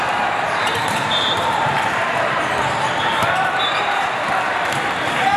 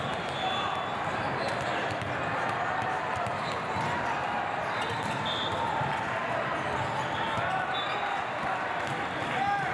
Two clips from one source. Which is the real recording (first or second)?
second